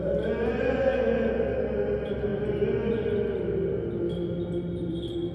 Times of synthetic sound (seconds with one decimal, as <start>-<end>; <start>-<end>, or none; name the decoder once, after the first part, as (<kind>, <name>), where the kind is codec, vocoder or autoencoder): 0.9-1.4 (vocoder, Vocos)